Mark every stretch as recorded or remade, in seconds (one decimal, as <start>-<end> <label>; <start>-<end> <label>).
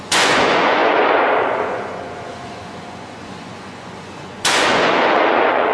0.0-5.7 remade